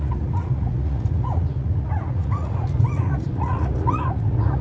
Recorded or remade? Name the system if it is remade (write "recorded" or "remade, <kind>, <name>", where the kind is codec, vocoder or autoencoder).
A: remade, vocoder, Vocos